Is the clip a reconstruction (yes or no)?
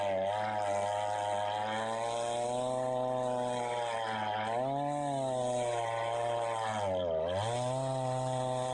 no